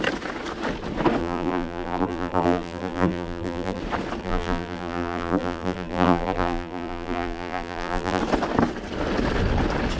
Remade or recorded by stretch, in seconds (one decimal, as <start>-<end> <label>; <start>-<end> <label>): 0.0-1.2 recorded; 1.2-3.8 remade; 3.8-4.2 recorded; 4.2-8.2 remade; 8.2-10.0 recorded